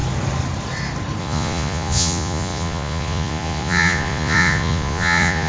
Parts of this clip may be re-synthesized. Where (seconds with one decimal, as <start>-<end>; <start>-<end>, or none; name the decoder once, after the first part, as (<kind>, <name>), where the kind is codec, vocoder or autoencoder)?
1.2-5.5 (vocoder, Vocos)